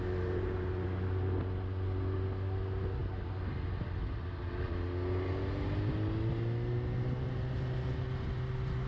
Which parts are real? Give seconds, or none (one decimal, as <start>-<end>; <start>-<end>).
0.0-8.9

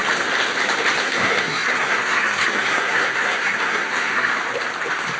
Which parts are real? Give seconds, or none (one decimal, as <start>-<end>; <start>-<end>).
0.0-1.0; 4.3-5.2

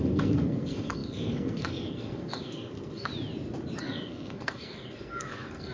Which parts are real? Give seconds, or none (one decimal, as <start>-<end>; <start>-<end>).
3.1-3.8

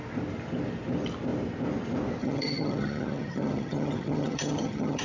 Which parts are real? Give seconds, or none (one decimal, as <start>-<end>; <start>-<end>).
0.0-2.2

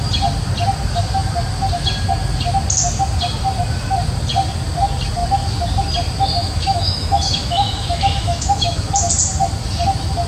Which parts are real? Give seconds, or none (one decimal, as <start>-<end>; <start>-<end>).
0.0-6.4; 8.9-10.3

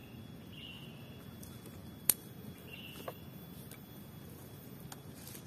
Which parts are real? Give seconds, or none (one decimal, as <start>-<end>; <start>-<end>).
0.0-5.5